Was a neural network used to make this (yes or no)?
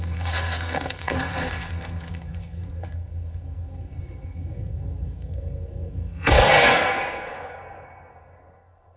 yes